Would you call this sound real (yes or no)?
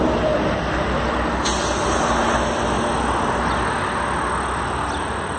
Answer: yes